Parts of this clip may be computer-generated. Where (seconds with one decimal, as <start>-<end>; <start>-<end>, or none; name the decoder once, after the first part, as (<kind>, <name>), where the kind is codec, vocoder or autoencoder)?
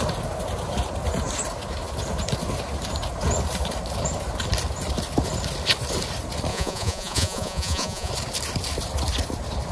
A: 6.5-8.1 (vocoder, Vocos)